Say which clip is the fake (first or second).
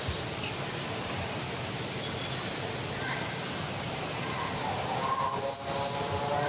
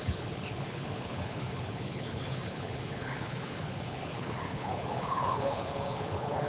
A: second